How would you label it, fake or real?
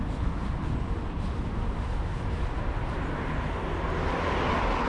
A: real